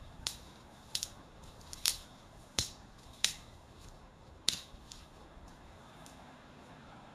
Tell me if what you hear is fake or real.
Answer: fake